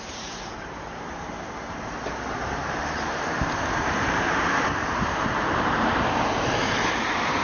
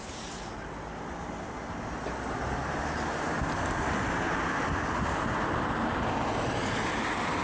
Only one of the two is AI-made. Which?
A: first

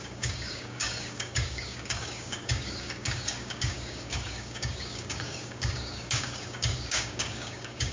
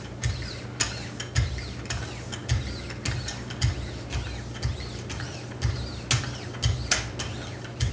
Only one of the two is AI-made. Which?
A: first